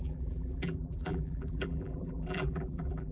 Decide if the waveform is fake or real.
fake